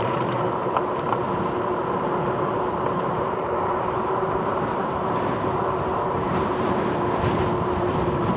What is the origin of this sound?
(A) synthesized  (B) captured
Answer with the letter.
A